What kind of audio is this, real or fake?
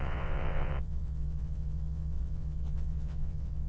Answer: fake